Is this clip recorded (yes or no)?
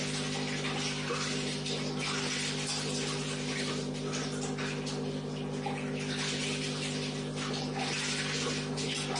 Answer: yes